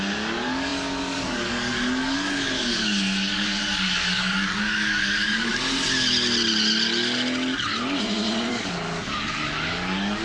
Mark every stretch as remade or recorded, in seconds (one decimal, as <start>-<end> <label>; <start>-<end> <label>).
0.0-5.5 remade; 5.5-8.5 recorded; 8.5-10.2 remade